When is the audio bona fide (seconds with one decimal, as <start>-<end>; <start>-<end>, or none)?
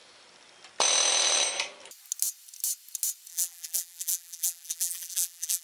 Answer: 0.0-3.3